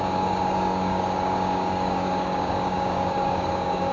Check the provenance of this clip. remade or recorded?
remade